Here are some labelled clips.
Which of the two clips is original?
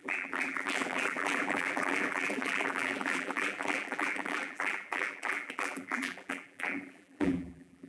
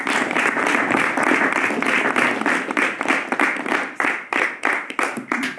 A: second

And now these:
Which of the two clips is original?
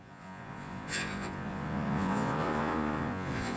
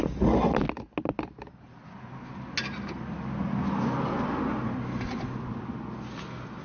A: second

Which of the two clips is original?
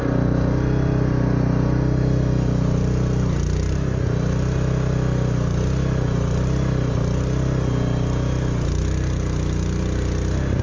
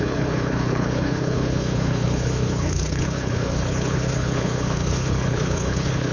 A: first